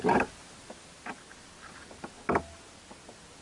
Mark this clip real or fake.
real